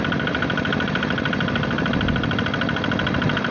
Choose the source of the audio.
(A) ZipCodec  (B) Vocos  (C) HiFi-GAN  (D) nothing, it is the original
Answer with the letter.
D